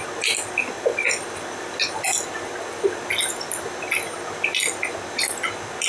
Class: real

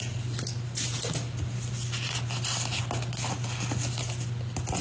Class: real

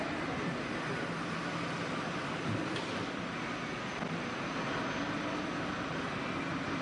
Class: real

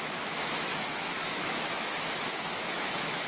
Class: fake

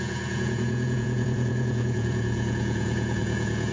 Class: fake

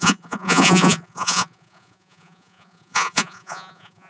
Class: fake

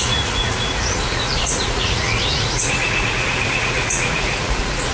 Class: fake